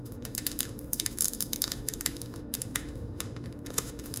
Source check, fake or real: fake